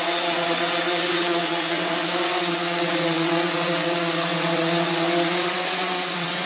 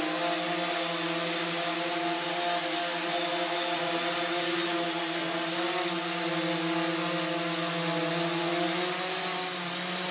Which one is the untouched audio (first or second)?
second